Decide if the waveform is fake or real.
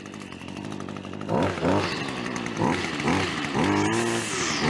real